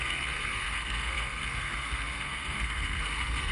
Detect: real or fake fake